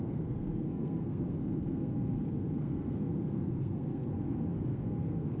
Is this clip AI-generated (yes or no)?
yes